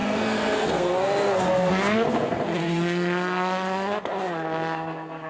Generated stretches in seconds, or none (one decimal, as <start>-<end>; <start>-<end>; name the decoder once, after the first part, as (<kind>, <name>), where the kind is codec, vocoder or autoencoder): 0.0-5.3 (codec, SNAC)